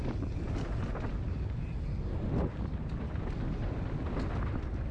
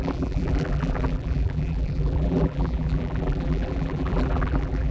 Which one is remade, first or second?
second